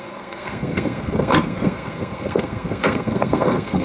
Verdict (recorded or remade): remade